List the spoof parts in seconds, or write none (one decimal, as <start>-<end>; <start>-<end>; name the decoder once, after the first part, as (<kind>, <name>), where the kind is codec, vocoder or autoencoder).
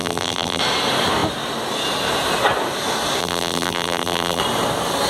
0.0-0.6 (vocoder, BigVGAN v2); 3.2-4.4